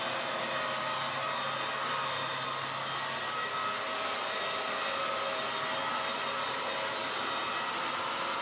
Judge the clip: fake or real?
real